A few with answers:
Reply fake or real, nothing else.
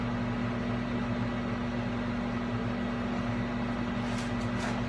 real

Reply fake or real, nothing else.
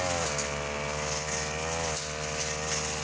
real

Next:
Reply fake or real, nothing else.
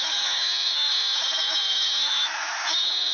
fake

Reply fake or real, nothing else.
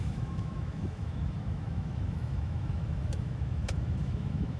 fake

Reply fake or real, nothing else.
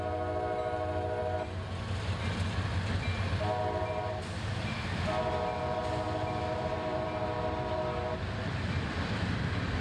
real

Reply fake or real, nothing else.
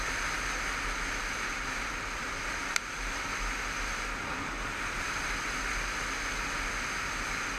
real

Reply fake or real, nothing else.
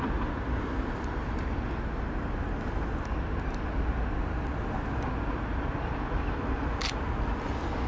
real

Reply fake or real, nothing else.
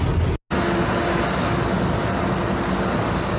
real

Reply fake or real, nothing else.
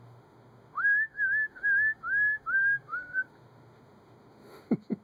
fake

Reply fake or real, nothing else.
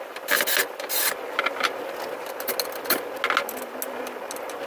real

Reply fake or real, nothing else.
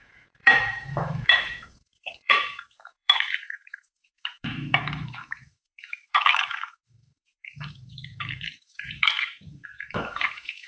fake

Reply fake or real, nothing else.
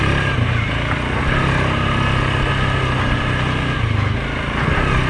real